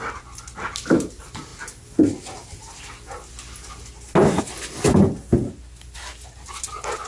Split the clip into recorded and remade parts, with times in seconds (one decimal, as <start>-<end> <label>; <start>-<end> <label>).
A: 0.0-7.1 recorded